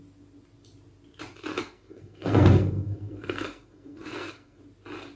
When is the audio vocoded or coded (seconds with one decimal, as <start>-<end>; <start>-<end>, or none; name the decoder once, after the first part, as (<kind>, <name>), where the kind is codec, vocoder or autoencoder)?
1.5-4.6 (codec, SNAC)

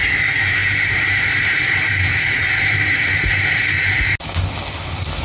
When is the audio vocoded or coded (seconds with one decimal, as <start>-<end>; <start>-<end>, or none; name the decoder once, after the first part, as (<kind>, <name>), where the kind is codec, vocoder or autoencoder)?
0.6-3.7 (vocoder, BigVGAN v2)

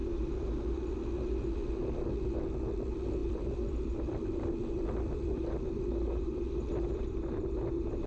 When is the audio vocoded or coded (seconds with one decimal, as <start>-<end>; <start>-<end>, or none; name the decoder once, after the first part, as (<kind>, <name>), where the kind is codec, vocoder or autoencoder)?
0.0-1.1 (vocoder, BigVGAN v2); 3.2-8.1

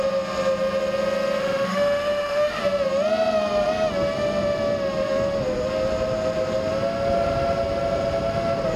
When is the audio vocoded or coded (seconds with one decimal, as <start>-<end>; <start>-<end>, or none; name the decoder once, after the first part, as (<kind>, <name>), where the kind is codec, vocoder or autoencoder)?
1.4-2.6 (autoencoder, DAC-VAE)

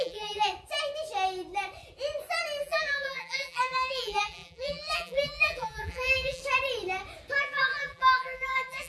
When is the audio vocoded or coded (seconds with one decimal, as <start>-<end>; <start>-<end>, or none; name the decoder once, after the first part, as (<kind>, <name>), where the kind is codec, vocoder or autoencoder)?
0.0-0.5 (vocoder, BigVGAN v2); 2.6-6.4; 7.4-8.9

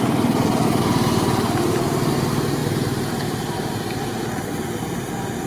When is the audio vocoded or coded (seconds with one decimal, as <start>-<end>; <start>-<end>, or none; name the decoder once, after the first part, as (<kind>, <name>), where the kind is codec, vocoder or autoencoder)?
none

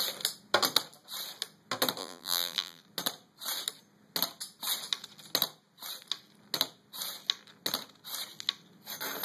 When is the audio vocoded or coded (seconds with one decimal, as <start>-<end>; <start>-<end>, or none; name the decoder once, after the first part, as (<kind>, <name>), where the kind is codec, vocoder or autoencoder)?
2.0-2.8 (vocoder, BigVGAN v2)